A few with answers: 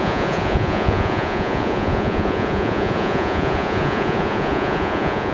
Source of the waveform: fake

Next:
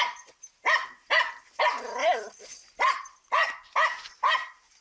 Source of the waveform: real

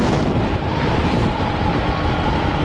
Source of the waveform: real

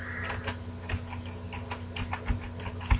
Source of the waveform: real